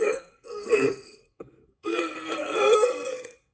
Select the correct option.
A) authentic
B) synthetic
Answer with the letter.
B